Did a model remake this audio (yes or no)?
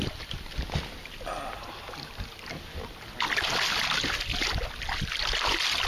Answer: no